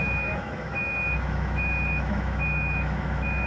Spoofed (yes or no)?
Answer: yes